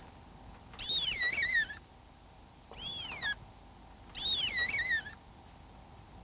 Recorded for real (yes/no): yes